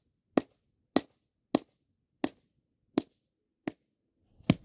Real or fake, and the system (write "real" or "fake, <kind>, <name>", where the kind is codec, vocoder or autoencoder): real